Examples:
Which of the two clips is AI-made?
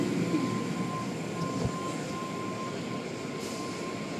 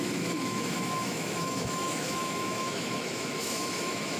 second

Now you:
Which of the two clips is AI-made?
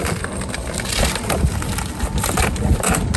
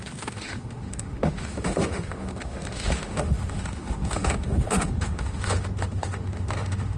second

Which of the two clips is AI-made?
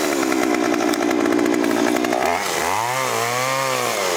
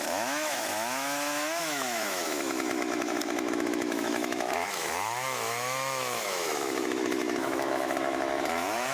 second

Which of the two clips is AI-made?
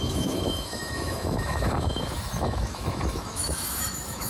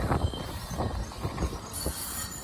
first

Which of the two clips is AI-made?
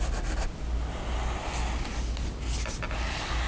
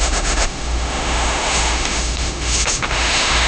second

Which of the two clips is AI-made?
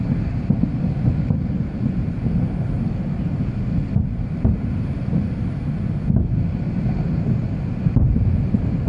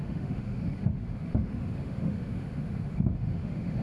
second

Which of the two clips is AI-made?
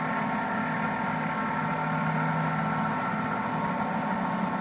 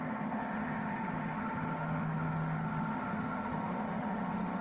second